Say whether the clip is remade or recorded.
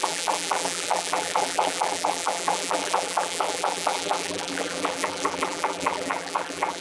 remade